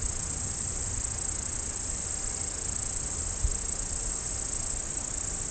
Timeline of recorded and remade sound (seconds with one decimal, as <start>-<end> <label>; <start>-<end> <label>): 0.0-5.5 recorded